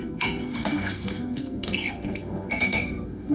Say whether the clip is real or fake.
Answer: fake